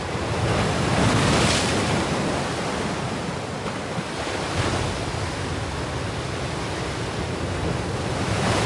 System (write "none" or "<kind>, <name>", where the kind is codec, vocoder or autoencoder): none